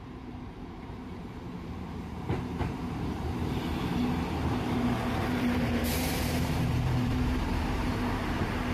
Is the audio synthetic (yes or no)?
yes